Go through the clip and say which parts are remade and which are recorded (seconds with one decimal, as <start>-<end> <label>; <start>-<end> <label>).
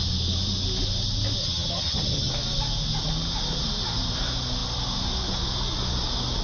0.0-1.4 recorded; 1.4-2.3 remade; 2.3-6.4 recorded